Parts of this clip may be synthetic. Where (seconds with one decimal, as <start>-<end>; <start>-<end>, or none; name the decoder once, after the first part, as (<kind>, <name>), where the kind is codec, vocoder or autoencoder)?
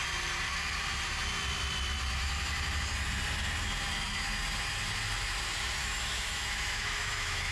5.8-7.5 (autoencoder, DAC-VAE)